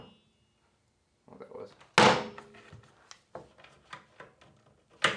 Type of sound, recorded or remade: recorded